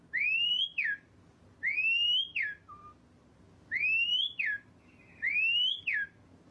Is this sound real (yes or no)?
yes